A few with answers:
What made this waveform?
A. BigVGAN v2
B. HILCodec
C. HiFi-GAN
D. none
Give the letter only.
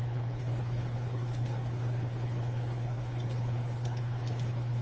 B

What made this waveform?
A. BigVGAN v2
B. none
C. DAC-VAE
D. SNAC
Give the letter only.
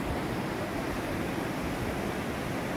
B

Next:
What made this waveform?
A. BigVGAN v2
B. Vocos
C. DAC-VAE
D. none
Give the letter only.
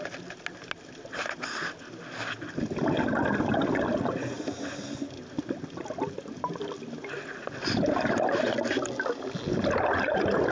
D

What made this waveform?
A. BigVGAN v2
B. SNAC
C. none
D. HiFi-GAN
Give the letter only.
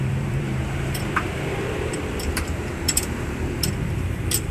A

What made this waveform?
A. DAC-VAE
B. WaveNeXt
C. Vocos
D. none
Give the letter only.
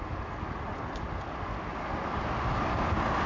D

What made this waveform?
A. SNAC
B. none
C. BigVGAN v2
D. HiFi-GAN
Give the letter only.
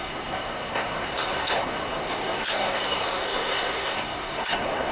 A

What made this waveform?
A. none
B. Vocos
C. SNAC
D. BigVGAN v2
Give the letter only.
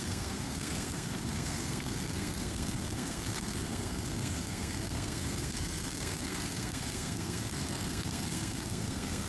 C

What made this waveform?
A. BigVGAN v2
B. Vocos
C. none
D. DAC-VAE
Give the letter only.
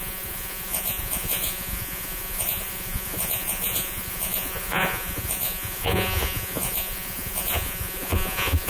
B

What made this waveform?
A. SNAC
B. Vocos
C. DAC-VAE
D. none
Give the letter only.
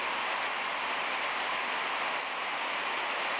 D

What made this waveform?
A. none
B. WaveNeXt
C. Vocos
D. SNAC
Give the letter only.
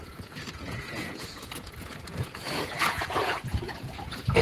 C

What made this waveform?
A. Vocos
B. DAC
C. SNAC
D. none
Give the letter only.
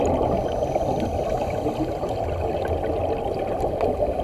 D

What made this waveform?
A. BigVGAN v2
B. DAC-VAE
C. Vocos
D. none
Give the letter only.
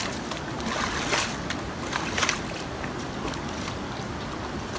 D